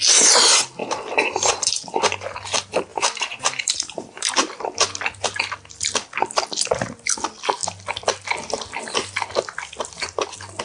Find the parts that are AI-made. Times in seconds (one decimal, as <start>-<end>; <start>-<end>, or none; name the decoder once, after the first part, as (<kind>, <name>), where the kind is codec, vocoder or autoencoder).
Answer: 0.8-1.7 (vocoder, BigVGAN v2); 2.9-4.3